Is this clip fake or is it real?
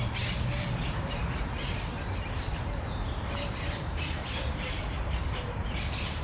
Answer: fake